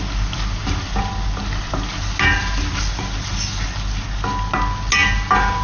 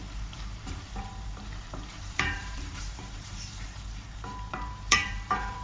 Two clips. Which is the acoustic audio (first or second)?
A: first